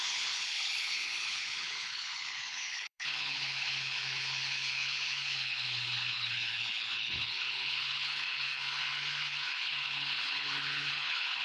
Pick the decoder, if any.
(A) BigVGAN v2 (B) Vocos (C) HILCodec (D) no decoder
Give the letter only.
C